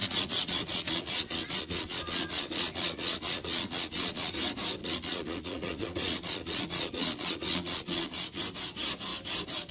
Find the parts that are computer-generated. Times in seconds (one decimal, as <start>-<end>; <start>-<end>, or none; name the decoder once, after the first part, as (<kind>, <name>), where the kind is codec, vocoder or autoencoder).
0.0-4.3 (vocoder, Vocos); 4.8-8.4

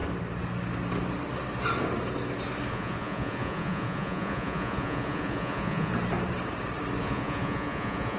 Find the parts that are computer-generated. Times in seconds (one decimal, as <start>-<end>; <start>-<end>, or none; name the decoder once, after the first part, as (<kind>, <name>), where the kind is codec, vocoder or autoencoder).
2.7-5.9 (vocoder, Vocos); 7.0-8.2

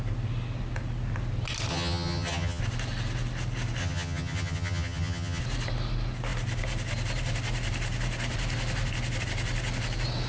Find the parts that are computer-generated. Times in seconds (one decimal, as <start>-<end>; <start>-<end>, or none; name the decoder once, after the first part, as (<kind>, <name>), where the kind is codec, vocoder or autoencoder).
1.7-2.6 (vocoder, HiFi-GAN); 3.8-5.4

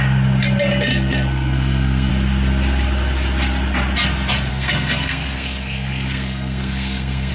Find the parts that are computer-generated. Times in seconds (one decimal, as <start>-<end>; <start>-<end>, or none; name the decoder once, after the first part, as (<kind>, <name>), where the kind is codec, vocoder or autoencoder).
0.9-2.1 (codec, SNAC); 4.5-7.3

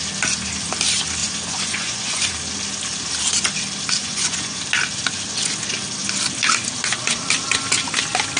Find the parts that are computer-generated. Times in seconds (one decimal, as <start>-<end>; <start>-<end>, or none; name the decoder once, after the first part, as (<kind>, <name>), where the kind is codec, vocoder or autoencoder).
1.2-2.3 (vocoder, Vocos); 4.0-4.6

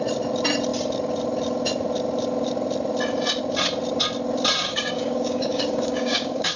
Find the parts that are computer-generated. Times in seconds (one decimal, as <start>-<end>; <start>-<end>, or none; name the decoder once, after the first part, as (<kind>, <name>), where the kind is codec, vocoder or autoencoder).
4.6-6.6 (codec, DAC)

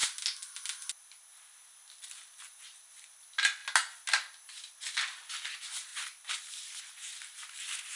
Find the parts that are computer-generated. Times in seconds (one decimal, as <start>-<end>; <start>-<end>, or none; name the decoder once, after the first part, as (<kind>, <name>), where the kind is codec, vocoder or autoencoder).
5.9-6.8 (vocoder, BigVGAN v2)